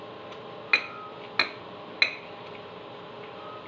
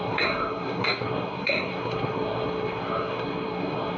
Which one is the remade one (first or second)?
second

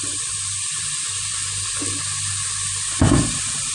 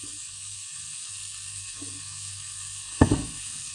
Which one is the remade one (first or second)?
second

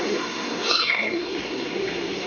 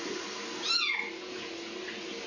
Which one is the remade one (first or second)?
first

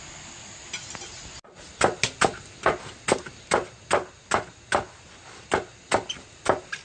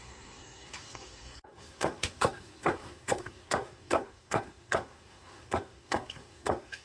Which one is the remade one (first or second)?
second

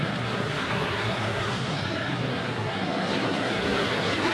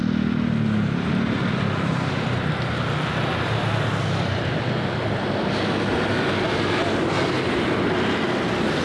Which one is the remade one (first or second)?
first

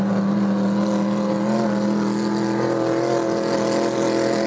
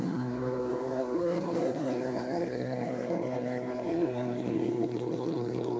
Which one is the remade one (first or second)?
second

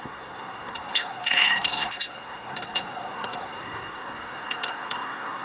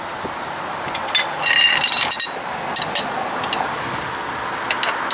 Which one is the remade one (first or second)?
first